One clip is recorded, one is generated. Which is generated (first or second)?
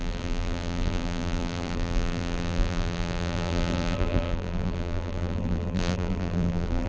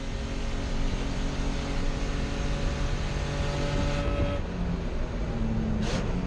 first